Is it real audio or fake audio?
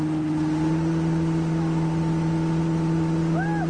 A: real